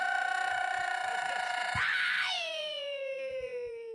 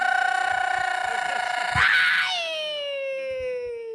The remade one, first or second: first